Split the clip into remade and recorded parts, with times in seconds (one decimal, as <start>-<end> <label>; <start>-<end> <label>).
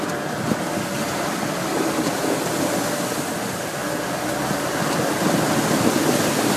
0.0-6.6 recorded